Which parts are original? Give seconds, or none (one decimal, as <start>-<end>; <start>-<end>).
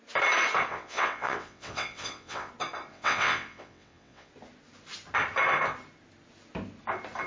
0.0-0.7; 2.5-2.9; 4.3-7.3